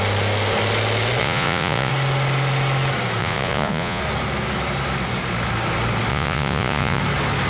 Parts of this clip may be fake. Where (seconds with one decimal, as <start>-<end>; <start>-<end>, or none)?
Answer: 1.2-1.9; 3.2-4.0; 6.1-7.0